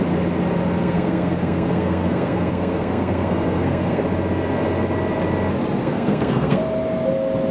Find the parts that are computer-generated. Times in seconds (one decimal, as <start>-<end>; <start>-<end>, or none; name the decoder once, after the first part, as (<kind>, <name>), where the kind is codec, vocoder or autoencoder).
0.8-4.0 (codec, SNAC); 5.8-6.6